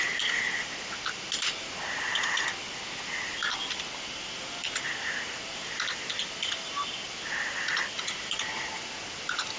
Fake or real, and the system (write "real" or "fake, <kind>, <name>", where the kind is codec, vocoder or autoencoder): real